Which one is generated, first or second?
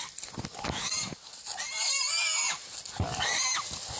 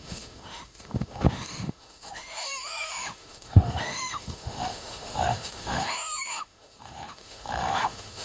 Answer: second